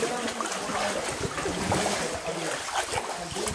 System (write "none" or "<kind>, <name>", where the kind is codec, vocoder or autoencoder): none